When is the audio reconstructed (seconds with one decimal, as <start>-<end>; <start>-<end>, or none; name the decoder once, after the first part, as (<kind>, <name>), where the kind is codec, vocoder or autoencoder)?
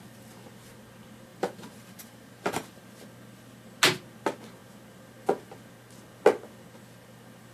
1.3-2.8 (vocoder, BigVGAN v2)